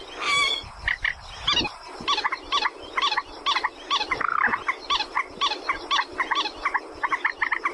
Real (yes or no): yes